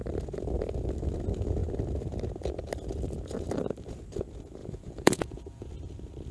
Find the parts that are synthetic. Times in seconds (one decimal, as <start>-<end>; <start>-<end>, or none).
4.6-5.7